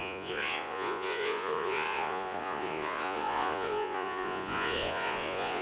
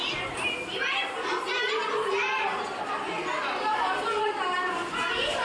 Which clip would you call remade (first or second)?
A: first